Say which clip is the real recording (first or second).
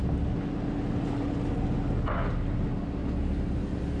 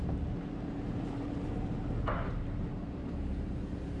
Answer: first